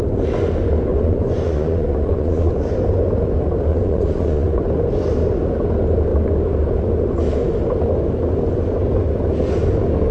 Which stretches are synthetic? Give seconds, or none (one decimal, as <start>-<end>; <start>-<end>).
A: 0.9-2.5; 3.7-4.6